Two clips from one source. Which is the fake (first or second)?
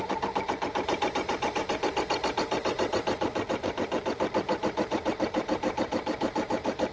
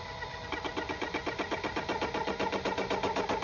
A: first